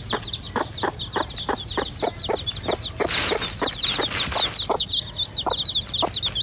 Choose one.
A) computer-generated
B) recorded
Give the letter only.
B